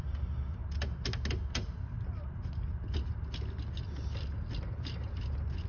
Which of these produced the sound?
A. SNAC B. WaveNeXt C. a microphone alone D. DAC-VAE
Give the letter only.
C